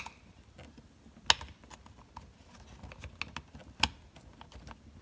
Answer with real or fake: real